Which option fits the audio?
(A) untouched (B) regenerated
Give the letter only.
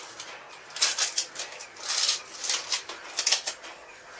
A